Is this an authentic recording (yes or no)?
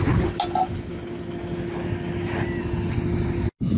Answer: yes